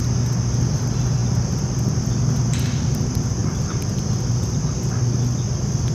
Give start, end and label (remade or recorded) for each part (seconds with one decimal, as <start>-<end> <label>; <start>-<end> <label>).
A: 0.0-5.9 recorded